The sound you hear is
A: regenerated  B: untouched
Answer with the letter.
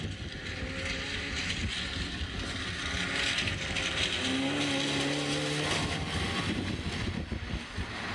B